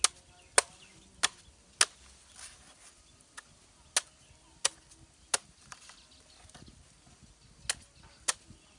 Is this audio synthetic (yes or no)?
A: no